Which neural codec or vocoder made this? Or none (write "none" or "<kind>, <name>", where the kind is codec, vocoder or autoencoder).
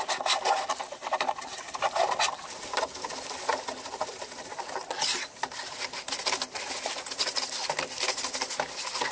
none